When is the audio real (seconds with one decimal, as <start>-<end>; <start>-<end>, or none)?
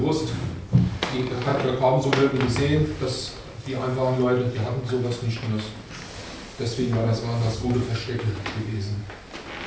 0.0-9.7